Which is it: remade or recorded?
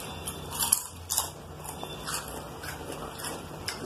recorded